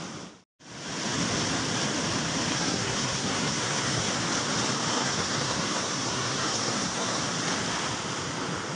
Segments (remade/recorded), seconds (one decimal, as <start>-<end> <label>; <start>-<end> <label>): 0.0-2.5 recorded; 2.5-4.1 remade; 4.1-4.9 recorded; 4.9-7.2 remade; 7.2-8.8 recorded